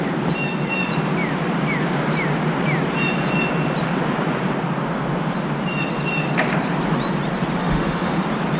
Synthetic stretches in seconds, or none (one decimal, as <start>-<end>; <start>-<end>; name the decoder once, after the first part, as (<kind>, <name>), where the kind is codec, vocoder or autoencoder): 7.6-8.2 (autoencoder, DAC-VAE)

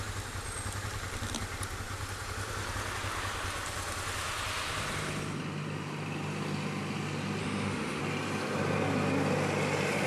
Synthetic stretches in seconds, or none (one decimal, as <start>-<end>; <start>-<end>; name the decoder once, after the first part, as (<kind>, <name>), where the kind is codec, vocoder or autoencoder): 7.4-8.0 (autoencoder, DAC-VAE)

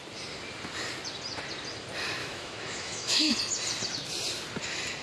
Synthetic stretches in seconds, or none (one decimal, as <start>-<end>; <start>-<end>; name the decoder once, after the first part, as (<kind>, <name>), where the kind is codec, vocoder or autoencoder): 2.2-3.3 (autoencoder, DAC-VAE)

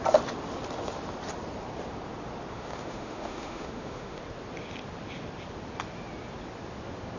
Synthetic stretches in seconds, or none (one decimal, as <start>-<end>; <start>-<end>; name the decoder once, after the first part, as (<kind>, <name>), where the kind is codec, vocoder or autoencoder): 2.5-4.2 (autoencoder, DAC-VAE)

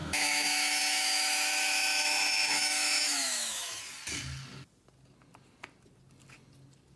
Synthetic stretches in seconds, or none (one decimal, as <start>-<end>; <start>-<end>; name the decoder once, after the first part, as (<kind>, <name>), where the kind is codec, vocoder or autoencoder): 0.0-3.8 (autoencoder, DAC-VAE)

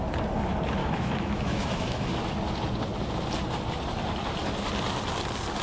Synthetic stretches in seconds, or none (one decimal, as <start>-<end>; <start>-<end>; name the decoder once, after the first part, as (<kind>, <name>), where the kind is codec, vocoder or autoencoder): 0.8-2.1 (autoencoder, DAC-VAE)

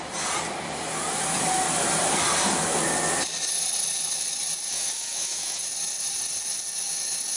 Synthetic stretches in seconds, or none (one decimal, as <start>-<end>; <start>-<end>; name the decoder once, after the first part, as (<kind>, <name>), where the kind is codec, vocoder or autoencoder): 4.7-5.6 (autoencoder, DAC-VAE)